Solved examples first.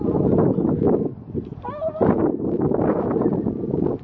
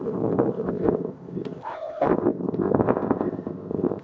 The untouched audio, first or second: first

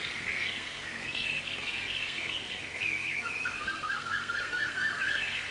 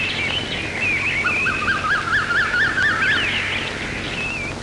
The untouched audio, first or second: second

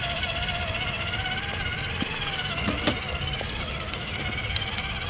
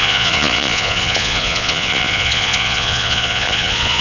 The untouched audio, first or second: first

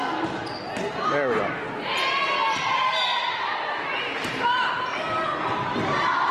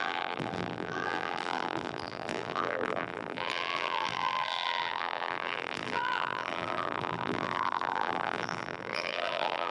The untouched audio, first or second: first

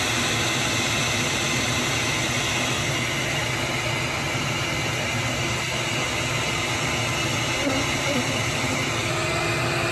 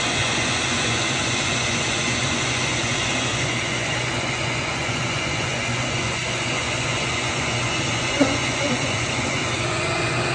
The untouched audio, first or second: first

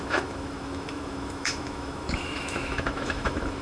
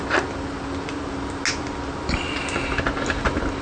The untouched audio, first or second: second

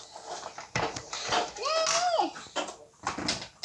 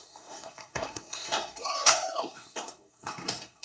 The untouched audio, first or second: first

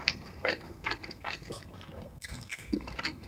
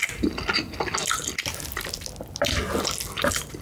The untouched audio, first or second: second